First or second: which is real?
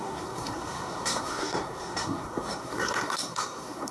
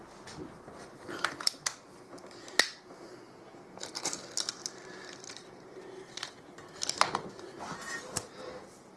second